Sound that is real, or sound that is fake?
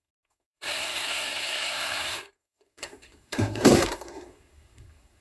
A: fake